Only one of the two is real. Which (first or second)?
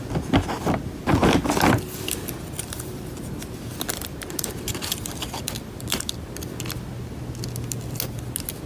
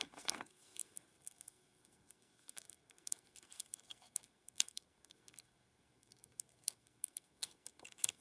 first